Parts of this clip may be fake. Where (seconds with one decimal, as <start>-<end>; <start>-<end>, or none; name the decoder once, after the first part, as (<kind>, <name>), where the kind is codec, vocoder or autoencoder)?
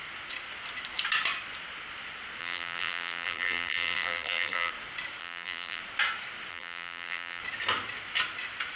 2.4-4.7 (vocoder, BigVGAN v2); 5.2-5.8; 6.5-7.4